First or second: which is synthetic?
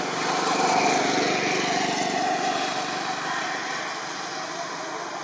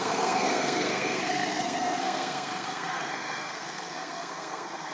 second